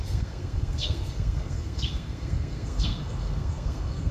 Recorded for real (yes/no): no